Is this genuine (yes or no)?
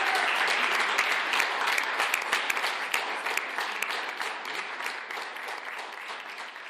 yes